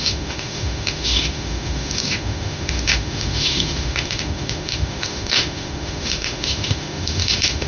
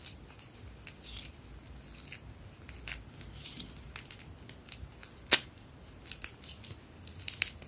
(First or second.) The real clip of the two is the second